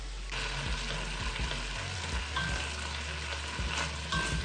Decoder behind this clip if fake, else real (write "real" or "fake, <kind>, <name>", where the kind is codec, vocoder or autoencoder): real